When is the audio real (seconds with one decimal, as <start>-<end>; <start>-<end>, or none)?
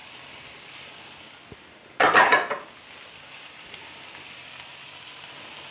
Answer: 0.0-5.7